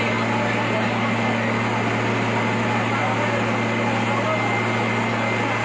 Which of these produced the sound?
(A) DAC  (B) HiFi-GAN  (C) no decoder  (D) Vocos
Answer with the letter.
C